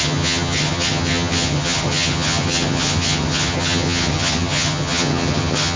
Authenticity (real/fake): fake